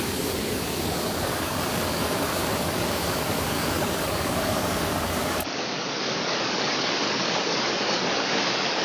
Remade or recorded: remade